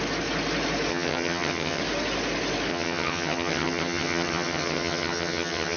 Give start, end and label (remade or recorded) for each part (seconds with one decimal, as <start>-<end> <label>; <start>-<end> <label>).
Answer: 0.0-0.9 recorded; 0.9-1.8 remade; 1.8-2.7 recorded; 2.7-5.8 remade